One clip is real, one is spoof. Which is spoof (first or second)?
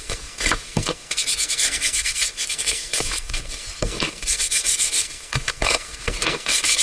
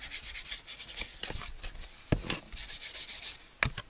first